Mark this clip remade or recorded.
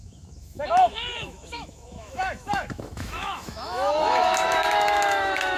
remade